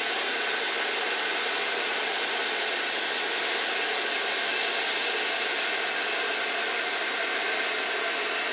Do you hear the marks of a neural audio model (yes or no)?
no